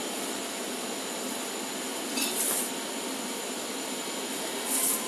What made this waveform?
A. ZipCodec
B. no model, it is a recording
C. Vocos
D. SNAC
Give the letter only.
B